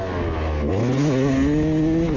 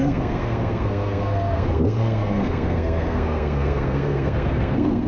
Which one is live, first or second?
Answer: first